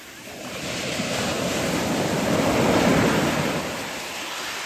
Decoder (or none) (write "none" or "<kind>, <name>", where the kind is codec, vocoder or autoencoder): none